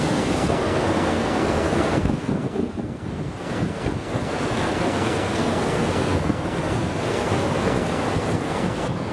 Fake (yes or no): yes